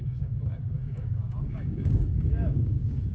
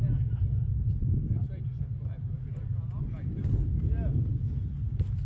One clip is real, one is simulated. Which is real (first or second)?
second